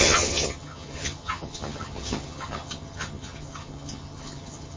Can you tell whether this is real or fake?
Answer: fake